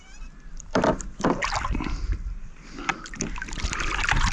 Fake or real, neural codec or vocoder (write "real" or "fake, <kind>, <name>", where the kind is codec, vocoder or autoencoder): fake, vocoder, BigVGAN v2